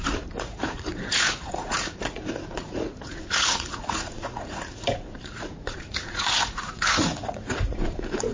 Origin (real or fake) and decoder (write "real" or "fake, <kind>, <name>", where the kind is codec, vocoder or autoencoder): fake, vocoder, Vocos